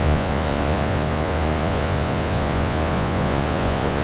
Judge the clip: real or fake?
fake